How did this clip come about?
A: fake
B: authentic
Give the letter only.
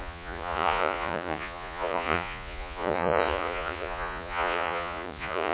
A